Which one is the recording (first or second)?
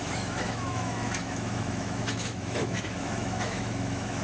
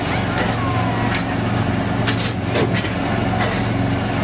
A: second